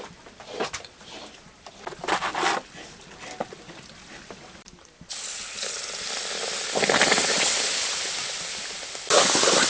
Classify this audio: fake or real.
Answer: fake